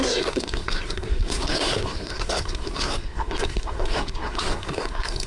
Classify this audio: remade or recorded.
remade